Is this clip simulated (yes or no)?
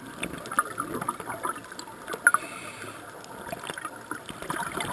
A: no